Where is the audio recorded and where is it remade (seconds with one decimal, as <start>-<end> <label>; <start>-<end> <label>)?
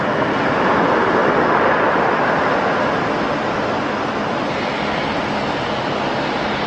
0.0-1.2 recorded; 1.2-5.2 remade; 5.2-6.7 recorded